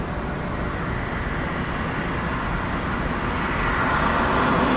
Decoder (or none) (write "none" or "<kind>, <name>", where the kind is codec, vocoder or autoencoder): none